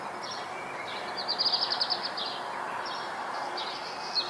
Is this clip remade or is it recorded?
recorded